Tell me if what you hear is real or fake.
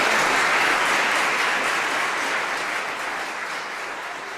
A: real